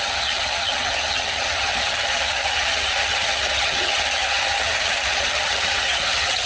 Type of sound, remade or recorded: remade